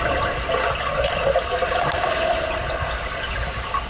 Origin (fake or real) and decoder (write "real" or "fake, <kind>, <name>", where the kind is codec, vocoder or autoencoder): real